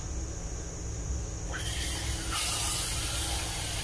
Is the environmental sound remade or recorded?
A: recorded